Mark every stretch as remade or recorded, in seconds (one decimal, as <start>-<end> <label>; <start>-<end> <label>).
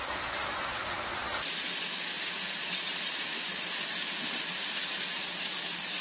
0.0-6.0 recorded